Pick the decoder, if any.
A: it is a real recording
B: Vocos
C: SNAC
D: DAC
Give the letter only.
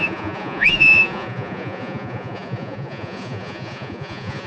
B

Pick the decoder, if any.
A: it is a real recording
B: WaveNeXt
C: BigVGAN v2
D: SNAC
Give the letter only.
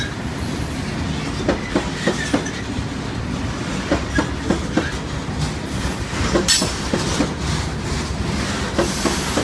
A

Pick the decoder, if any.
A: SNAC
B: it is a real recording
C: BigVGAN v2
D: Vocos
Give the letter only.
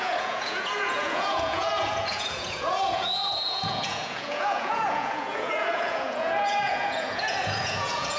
D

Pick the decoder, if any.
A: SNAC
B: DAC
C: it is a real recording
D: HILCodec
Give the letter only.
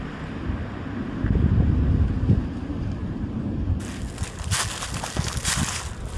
C